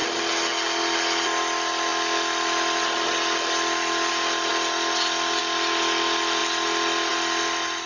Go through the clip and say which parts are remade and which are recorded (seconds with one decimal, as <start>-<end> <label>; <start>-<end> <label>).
0.0-7.9 recorded